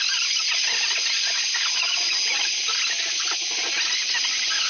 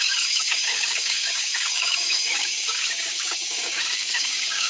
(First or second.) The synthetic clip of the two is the second